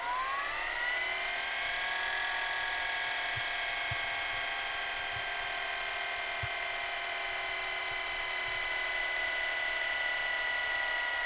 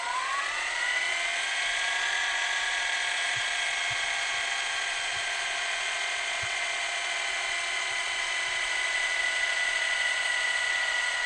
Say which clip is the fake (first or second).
second